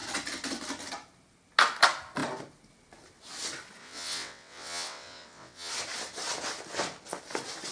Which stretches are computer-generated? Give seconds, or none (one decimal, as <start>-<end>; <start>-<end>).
3.8-5.7